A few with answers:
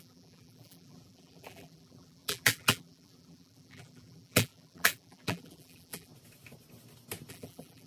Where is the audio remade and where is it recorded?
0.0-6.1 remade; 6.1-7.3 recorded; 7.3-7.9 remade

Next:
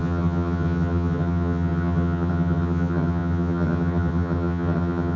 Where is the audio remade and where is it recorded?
0.0-5.2 remade